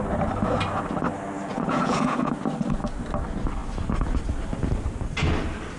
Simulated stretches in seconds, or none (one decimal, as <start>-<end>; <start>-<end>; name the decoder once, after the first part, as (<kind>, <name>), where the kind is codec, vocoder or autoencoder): 1.5-2.3 (vocoder, Vocos)